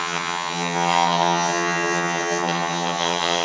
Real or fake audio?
fake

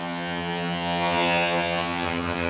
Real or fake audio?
fake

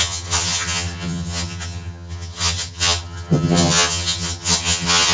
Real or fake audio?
fake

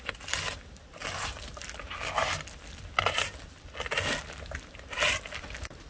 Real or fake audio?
real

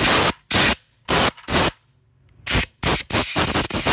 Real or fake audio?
real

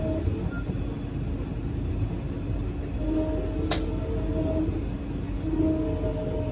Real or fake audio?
real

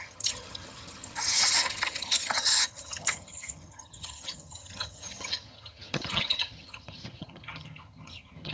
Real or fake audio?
fake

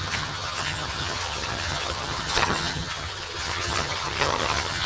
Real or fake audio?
fake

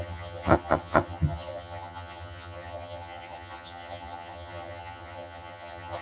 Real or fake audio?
fake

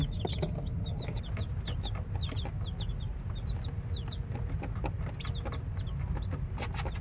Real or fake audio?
real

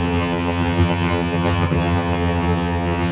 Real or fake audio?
fake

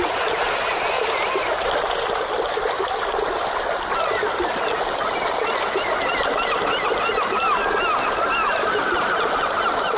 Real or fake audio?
real